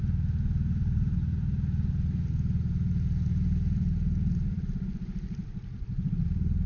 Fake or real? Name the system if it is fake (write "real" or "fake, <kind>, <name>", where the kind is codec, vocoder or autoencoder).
real